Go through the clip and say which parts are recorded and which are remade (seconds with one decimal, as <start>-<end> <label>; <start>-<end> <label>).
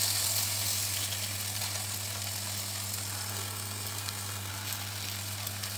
0.0-3.3 recorded; 3.3-4.5 remade; 4.5-5.8 recorded